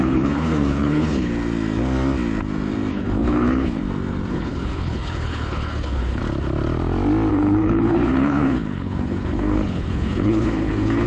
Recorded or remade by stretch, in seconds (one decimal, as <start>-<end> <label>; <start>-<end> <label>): 0.0-1.3 remade; 1.3-2.9 recorded; 2.9-3.8 remade; 3.8-4.3 recorded; 4.3-6.2 remade; 6.2-7.3 recorded; 7.3-11.1 remade